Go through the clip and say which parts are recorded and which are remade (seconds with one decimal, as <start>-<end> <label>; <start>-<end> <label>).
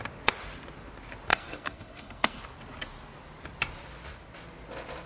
0.0-1.3 recorded; 1.3-2.4 remade; 2.4-5.1 recorded